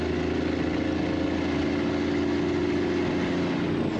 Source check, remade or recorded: recorded